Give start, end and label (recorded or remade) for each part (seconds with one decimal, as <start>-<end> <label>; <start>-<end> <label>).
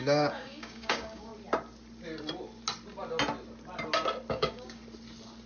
0.0-1.3 remade; 1.3-4.3 recorded; 4.3-4.8 remade; 4.8-5.5 recorded